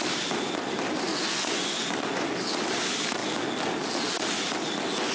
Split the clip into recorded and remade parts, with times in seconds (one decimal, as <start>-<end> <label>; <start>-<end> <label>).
0.0-1.1 recorded; 1.1-2.3 remade; 2.3-5.1 recorded

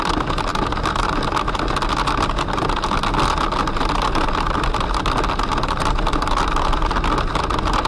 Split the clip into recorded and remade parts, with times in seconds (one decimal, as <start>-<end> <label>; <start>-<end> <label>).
0.0-7.9 recorded

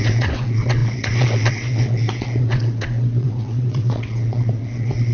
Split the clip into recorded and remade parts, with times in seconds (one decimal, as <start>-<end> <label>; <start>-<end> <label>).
0.0-5.1 remade